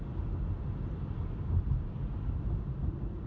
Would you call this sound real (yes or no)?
yes